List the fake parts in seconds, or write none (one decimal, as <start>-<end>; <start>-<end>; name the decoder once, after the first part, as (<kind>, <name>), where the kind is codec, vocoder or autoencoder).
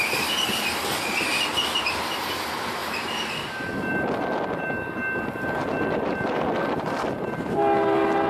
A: none